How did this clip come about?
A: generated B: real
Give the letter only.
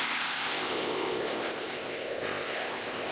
A